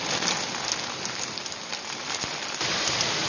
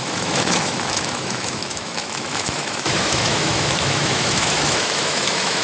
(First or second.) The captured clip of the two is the first